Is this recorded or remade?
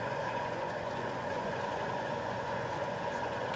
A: remade